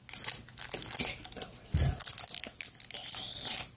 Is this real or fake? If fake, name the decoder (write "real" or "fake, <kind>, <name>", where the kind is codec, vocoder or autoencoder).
real